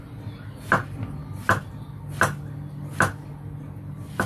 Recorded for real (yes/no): yes